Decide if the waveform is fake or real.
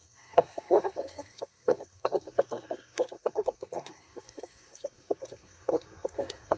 fake